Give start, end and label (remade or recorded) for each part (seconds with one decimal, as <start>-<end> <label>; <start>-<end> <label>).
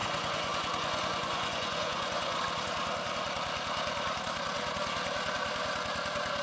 0.0-2.4 remade; 2.4-6.4 recorded